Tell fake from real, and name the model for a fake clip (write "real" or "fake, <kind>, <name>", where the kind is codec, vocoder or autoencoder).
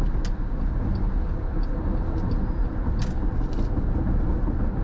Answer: real